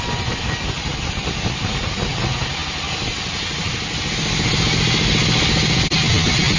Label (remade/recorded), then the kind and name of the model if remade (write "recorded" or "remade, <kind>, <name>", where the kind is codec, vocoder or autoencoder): recorded